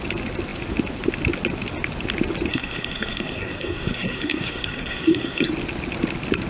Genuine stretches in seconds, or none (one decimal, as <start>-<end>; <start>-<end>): 0.0-2.5; 5.5-6.5